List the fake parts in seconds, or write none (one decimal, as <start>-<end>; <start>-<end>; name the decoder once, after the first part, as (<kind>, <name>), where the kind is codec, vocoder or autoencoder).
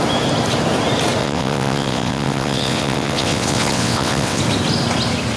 1.2-4.4 (vocoder, WaveNeXt)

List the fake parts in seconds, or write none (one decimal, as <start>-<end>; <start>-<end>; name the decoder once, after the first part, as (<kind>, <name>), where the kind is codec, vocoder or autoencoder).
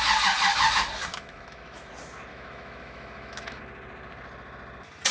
1.1-1.9 (autoencoder, DAC-VAE); 2.3-3.6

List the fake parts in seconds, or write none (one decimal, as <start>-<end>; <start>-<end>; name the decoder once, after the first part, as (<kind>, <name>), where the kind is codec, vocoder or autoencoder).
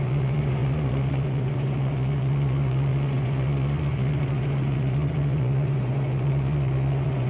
0.0-7.3 (vocoder, Vocos)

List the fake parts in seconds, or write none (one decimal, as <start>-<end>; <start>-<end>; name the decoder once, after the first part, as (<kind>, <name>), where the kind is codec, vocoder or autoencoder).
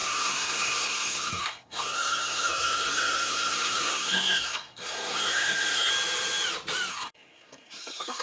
0.0-5.9 (codec, SNAC); 6.9-8.2